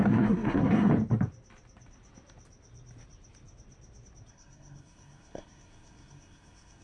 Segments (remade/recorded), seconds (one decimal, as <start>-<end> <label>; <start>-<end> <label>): 0.0-0.9 remade; 0.9-4.3 recorded; 4.3-6.8 remade